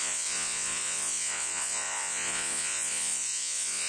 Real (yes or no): no